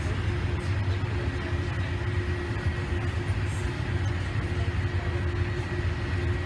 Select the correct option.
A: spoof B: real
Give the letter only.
B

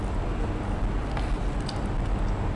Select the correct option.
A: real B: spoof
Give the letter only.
A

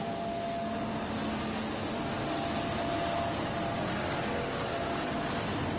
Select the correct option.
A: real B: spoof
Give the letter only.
A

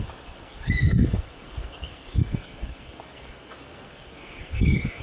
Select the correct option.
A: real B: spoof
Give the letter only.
B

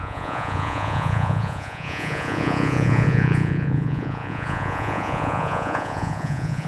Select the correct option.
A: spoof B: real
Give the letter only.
A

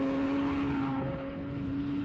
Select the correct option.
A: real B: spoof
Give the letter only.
B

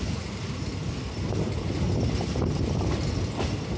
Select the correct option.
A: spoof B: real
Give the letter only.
B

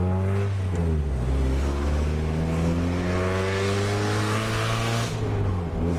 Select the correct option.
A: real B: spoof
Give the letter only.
A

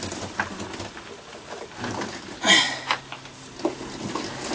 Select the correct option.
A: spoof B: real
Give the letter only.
B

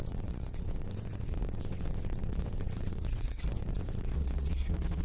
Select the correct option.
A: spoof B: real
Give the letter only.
A